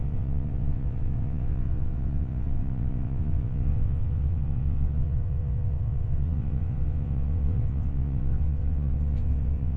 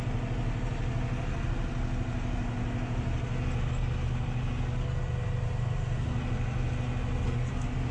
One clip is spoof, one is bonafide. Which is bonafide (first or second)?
second